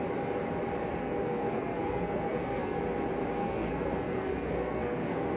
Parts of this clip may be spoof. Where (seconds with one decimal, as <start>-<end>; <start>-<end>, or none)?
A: 1.0-2.8; 3.4-5.4